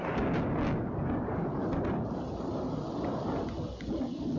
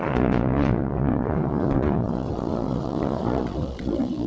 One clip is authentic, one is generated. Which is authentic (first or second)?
first